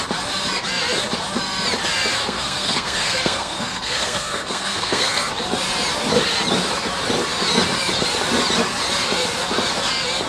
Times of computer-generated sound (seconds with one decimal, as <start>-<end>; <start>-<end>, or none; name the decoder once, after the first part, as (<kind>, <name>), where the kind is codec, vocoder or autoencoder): 2.2-5.3 (codec, SNAC)